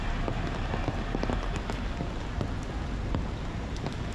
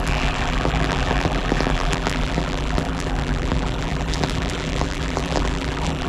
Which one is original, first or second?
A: first